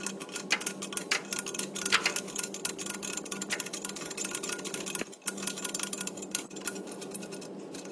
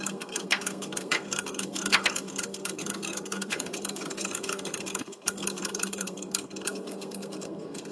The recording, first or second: first